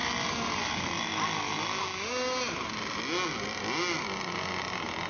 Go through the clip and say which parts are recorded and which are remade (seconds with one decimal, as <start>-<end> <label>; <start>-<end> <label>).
0.0-5.1 recorded